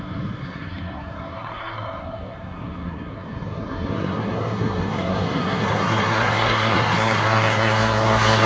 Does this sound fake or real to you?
fake